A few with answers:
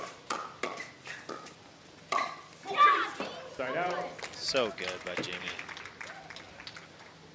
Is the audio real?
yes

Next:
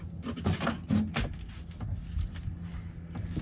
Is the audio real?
yes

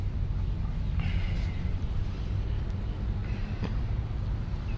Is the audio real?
yes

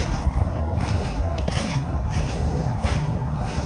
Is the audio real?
no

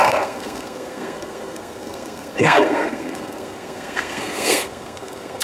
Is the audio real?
no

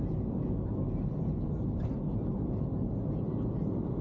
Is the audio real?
yes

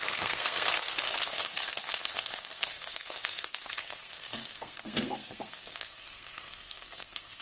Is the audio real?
no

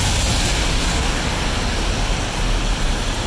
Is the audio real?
yes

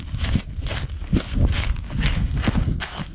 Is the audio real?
no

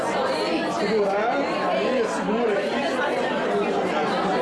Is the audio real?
yes